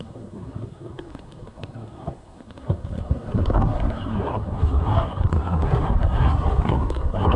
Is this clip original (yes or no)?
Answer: no